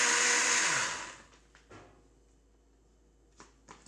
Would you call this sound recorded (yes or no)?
yes